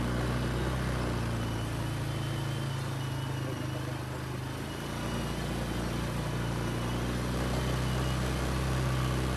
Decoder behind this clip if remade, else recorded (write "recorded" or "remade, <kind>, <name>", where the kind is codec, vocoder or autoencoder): recorded